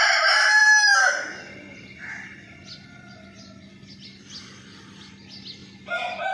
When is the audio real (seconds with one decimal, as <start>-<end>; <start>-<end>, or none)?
0.0-6.3